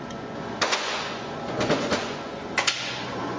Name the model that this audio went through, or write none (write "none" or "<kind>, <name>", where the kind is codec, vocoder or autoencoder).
vocoder, Vocos